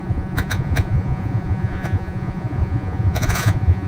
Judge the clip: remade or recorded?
remade